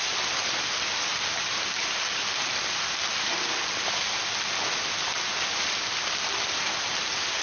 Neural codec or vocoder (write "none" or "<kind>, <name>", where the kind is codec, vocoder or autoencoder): none